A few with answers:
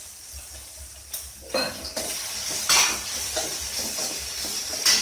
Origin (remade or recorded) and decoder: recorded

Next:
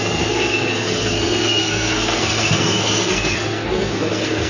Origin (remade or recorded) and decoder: remade, codec, SNAC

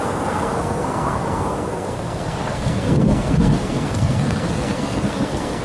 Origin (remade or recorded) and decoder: remade, codec, SNAC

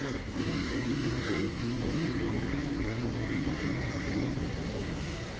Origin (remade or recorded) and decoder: remade, codec, SNAC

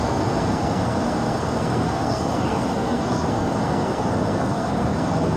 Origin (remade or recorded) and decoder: remade, codec, SNAC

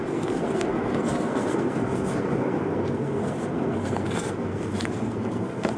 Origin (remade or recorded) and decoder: remade, codec, SNAC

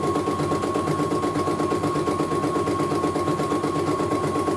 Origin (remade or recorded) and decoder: recorded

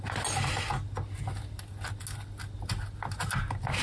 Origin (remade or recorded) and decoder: recorded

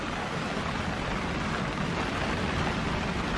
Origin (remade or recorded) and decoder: recorded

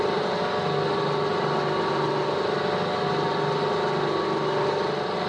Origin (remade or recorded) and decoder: recorded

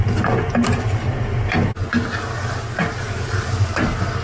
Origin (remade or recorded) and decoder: recorded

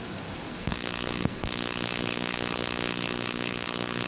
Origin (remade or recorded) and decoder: remade, codec, SNAC